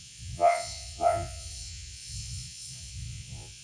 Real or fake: fake